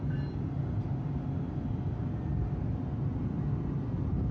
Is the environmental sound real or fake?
real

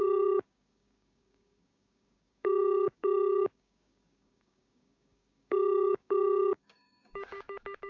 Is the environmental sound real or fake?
fake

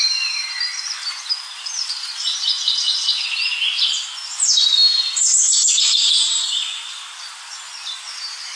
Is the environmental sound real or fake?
real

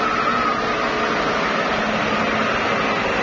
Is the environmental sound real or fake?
real